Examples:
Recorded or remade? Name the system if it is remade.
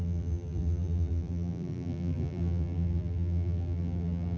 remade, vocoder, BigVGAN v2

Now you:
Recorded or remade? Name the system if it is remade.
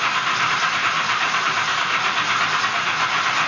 recorded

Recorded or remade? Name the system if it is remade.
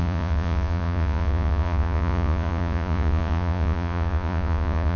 remade, vocoder, Vocos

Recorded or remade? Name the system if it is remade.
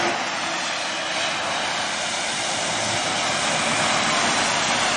recorded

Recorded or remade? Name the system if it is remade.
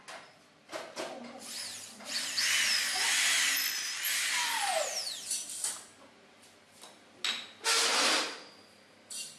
recorded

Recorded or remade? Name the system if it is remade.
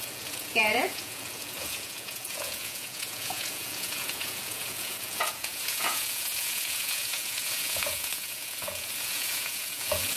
remade, vocoder, Vocos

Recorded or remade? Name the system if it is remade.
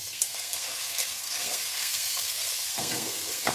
remade, codec, SNAC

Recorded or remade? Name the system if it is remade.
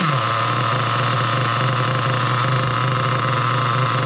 recorded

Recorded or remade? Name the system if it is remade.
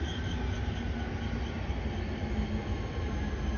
recorded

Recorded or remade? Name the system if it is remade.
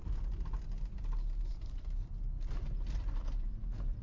recorded